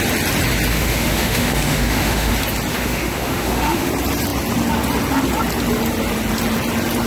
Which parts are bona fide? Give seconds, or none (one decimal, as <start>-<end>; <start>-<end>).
0.0-0.7; 2.3-2.7; 3.9-7.1